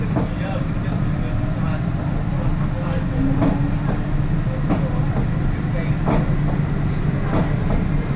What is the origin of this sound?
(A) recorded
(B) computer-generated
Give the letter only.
A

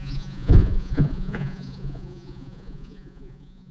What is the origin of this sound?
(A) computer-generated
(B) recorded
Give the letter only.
A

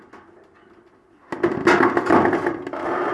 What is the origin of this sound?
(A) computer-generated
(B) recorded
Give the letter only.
B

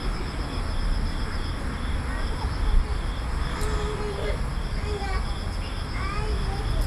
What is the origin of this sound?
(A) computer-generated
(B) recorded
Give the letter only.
B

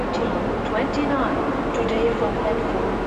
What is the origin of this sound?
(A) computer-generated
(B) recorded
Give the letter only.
B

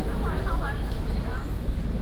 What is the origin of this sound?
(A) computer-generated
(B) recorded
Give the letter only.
A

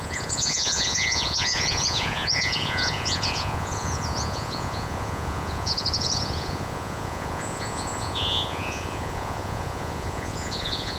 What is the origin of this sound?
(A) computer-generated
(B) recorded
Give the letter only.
A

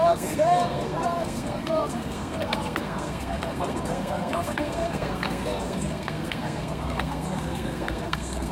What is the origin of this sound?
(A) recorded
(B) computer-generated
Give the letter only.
B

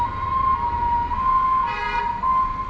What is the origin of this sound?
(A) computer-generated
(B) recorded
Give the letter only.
B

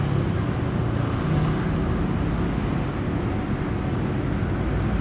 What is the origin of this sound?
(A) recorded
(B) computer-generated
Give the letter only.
A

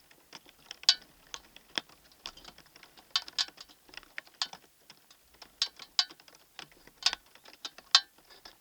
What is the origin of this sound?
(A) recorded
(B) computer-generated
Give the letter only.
A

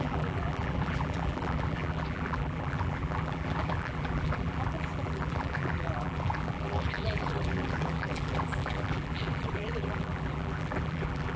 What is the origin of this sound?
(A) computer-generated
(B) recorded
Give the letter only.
A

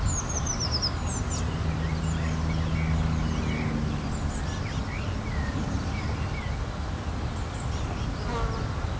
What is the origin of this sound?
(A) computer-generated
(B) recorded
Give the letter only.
B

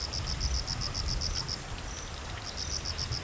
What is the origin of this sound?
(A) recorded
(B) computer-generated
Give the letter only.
A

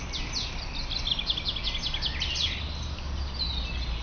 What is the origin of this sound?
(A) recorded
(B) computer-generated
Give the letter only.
A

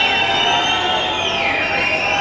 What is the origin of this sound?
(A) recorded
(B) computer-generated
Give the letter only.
A